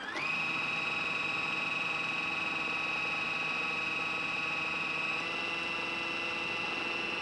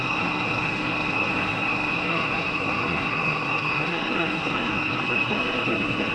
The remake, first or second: second